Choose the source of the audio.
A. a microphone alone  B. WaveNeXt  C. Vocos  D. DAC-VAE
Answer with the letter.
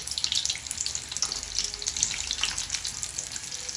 A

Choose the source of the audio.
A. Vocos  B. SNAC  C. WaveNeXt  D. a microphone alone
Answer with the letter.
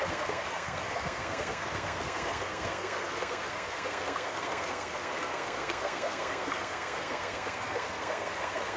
B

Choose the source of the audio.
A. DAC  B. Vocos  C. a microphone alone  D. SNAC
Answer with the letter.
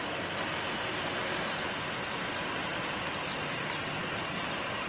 C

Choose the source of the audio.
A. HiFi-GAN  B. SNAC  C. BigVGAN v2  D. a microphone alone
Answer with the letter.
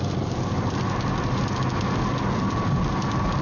D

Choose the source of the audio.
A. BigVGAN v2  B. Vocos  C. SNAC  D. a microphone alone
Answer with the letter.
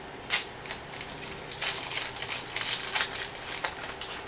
D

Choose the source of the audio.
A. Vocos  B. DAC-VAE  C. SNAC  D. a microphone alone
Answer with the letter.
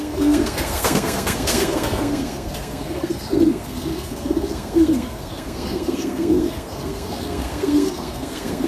C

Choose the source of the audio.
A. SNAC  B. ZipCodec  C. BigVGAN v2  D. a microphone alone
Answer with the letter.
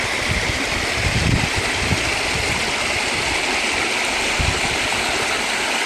D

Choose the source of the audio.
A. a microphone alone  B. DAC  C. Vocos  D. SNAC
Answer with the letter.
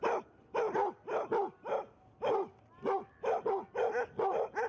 A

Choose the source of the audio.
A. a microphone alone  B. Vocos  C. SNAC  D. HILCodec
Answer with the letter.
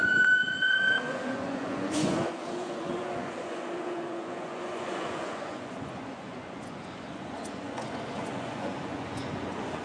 B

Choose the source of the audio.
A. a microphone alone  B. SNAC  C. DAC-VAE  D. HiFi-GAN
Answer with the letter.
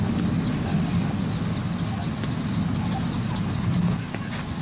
A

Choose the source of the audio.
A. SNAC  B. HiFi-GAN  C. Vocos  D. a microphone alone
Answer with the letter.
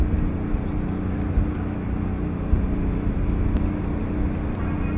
D